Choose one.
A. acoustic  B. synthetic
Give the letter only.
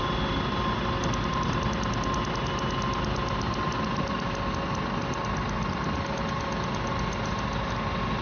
A